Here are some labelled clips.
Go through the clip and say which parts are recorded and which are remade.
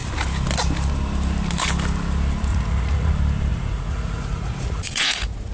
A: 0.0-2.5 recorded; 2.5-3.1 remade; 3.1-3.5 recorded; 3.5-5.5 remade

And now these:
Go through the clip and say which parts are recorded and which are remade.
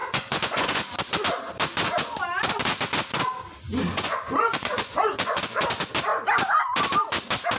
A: 0.0-0.8 remade; 0.8-3.9 recorded; 3.9-5.4 remade; 5.4-7.6 recorded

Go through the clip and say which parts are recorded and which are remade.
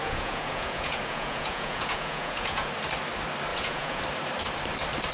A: 0.0-2.7 remade; 2.7-3.5 recorded; 3.5-4.0 remade; 4.0-5.1 recorded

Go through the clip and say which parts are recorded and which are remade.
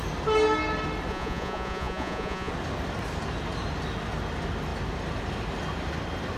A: 0.0-1.1 recorded; 1.1-2.5 remade; 2.5-6.4 recorded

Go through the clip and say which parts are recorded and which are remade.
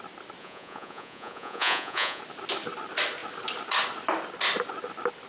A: 0.0-0.4 recorded; 0.4-2.2 remade; 2.2-5.3 recorded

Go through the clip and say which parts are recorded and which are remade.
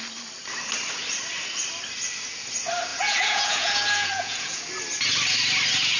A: 0.0-2.9 recorded; 2.9-4.6 remade; 4.6-6.0 recorded